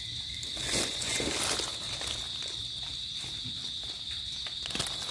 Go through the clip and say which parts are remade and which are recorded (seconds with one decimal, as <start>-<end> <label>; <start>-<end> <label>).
0.0-0.6 recorded; 0.6-1.2 remade; 1.2-5.1 recorded